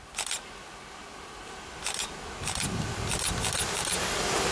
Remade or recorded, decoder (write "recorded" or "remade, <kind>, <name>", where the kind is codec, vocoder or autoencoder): recorded